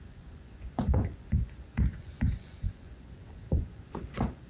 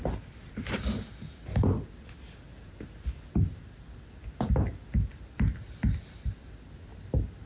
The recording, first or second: second